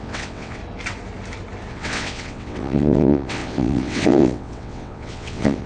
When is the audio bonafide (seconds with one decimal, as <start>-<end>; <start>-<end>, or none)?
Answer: 0.6-1.7